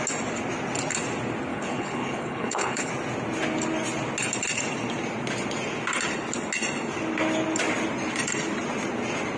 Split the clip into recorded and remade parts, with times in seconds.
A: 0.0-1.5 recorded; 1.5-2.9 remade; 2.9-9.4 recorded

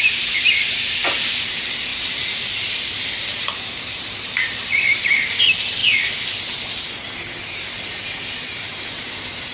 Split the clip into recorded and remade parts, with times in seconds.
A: 0.0-9.5 remade

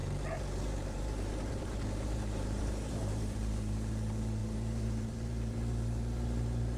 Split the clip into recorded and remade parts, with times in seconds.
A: 0.0-3.9 remade; 3.9-4.4 recorded; 4.4-6.8 remade

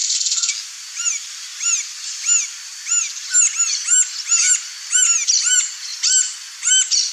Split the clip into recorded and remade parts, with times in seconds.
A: 0.0-0.5 remade; 0.5-7.1 recorded